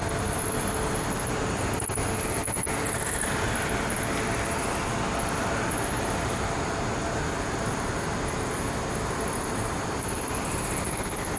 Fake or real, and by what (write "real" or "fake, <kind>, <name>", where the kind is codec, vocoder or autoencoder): real